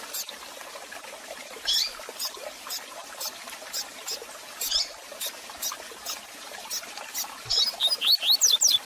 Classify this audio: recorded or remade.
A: recorded